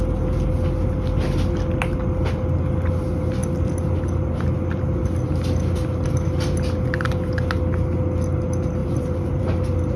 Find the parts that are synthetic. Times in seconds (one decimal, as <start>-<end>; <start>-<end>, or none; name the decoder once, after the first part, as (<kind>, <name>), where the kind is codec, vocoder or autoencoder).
8.8-10.0 (vocoder, BigVGAN v2)